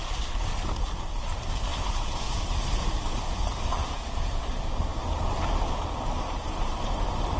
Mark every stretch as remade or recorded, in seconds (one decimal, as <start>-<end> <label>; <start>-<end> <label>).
0.0-1.7 recorded; 1.7-2.4 remade; 2.4-3.8 recorded; 3.8-4.4 remade; 4.4-7.4 recorded

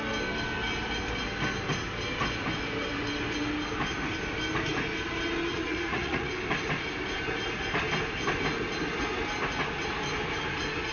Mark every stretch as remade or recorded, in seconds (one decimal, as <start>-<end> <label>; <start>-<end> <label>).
0.0-5.5 recorded; 5.5-6.3 remade; 6.3-10.9 recorded

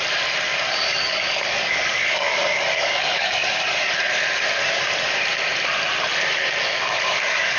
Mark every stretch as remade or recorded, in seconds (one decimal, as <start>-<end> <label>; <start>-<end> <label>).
0.0-0.5 recorded; 0.5-3.9 remade; 3.9-6.6 recorded; 6.6-7.6 remade